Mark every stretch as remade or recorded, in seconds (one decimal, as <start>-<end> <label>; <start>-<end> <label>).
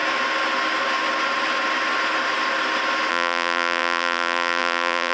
0.0-3.1 recorded; 3.1-5.1 remade